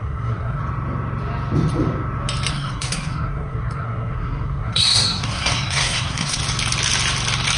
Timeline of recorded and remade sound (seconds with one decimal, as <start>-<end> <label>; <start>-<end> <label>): 0.0-0.6 remade; 0.6-2.5 recorded; 2.5-6.4 remade; 6.4-7.6 recorded